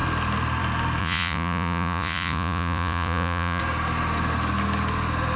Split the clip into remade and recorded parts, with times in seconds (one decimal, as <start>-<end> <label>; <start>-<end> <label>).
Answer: 0.0-1.0 recorded; 1.0-3.6 remade; 3.6-5.4 recorded